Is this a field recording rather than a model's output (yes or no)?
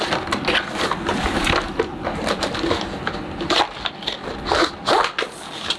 yes